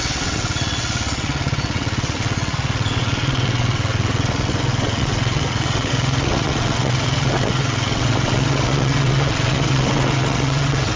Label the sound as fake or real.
fake